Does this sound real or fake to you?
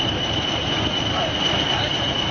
real